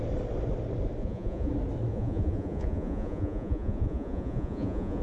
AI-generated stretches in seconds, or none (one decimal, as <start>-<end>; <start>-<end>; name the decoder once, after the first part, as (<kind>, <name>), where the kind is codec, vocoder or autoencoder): 1.0-1.5 (vocoder, Vocos); 1.9-5.0